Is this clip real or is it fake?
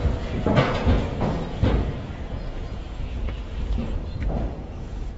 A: fake